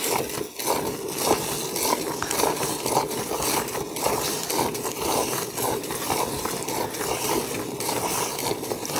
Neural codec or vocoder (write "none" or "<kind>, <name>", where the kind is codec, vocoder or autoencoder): none